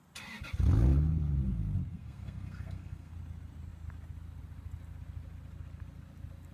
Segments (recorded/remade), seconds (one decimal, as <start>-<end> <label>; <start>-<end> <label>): 0.0-1.9 recorded; 1.9-3.1 remade; 3.1-6.5 recorded